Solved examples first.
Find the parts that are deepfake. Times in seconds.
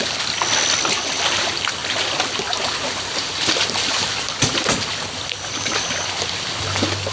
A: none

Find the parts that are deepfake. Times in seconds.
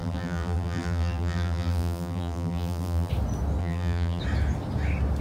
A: 0.0-3.1 (vocoder, BigVGAN v2); 3.6-4.2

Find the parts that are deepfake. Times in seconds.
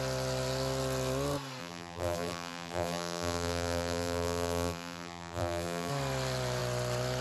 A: 1.6-5.9 (vocoder, BigVGAN v2)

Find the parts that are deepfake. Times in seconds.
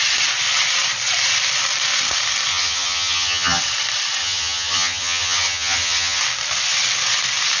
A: 2.5-3.6 (vocoder, HiFi-GAN); 4.2-6.2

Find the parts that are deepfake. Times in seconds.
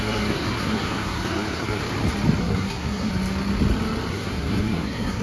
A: 0.0-1.8 (codec, SNAC); 2.4-3.1; 4.1-5.2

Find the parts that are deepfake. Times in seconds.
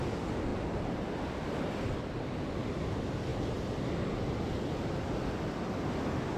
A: none